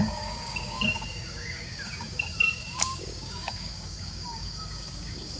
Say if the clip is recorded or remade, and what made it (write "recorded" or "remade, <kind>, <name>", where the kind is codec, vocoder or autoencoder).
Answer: remade, codec, DAC